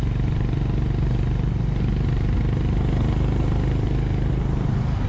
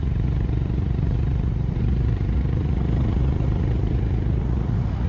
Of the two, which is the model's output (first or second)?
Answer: second